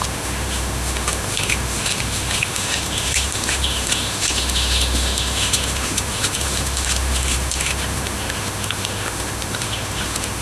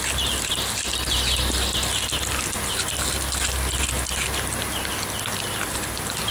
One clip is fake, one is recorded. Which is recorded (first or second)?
second